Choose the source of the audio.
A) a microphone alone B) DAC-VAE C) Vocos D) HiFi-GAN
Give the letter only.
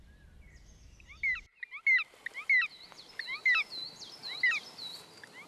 A